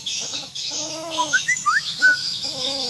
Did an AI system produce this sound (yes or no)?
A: yes